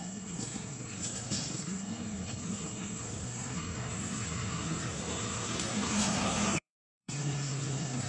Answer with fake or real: fake